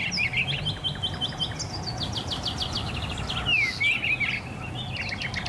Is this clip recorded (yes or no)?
yes